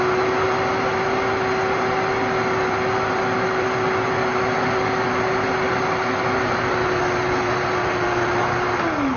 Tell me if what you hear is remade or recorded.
recorded